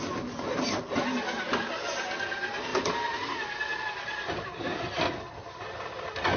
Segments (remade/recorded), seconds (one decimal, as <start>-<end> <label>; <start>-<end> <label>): 0.0-6.4 recorded